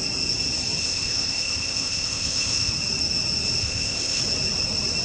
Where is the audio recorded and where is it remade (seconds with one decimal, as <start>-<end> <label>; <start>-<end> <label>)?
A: 0.0-0.8 recorded; 0.8-2.7 remade; 2.7-3.6 recorded; 3.6-4.2 remade; 4.2-5.0 recorded